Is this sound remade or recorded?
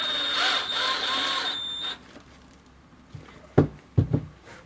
recorded